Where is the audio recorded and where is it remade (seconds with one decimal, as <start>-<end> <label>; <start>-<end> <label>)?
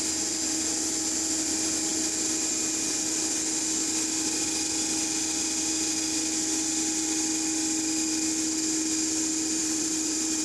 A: 0.0-9.6 recorded; 9.6-10.4 remade